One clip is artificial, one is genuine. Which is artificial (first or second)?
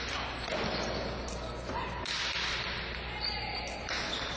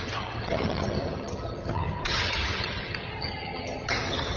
second